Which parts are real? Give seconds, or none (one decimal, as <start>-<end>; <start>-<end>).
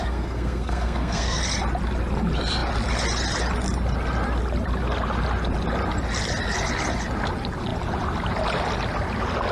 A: 1.4-9.5